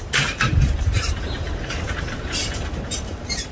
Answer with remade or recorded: remade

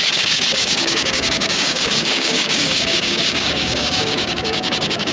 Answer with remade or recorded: remade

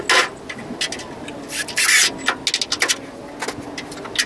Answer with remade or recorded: recorded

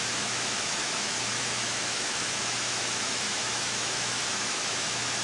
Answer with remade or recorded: remade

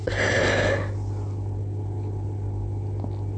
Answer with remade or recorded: recorded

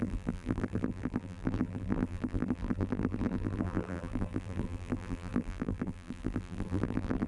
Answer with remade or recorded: remade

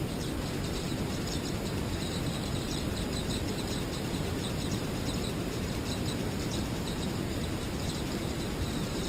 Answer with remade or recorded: remade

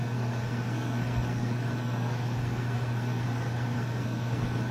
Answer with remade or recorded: remade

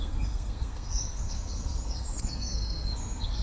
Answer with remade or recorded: remade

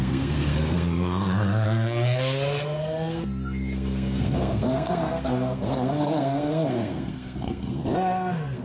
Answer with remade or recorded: remade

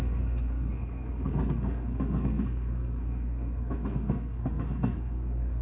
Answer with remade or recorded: remade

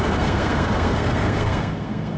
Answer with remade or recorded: remade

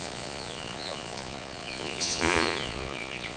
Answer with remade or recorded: remade